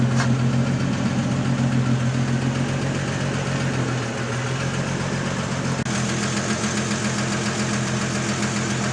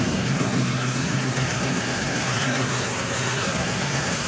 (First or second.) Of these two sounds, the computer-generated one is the second